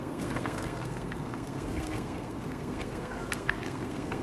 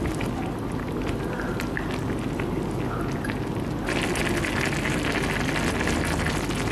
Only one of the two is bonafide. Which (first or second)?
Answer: second